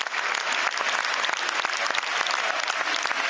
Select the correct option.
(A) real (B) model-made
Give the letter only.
A